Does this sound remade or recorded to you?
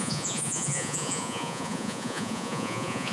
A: remade